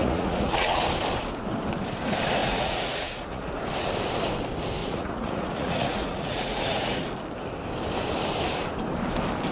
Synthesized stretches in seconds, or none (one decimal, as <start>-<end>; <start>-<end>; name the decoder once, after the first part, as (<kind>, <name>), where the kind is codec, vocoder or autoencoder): 0.0-0.8 (vocoder, Vocos); 2.4-3.5; 4.8-7.0